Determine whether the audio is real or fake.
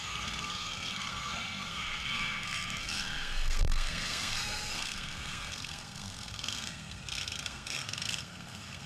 fake